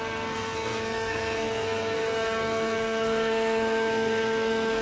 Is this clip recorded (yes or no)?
no